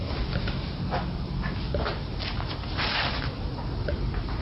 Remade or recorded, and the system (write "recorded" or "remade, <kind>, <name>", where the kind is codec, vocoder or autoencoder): recorded